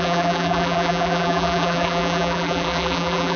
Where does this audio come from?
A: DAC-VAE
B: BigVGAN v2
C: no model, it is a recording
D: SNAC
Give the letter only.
B